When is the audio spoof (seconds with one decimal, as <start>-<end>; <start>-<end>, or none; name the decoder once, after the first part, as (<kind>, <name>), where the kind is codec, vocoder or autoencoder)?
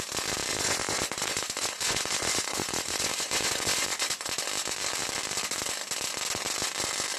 0.5-4.3 (vocoder, Vocos)